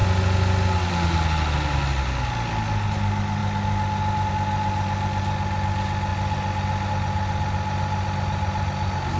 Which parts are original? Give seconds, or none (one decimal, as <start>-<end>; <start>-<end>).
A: 0.0-9.2